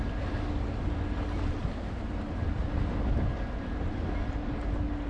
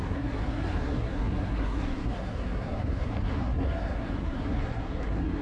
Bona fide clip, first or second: first